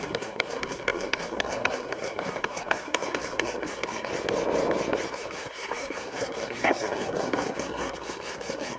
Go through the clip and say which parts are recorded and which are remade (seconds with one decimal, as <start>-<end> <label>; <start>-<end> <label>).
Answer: 0.0-4.1 remade; 4.1-5.1 recorded; 5.1-8.8 remade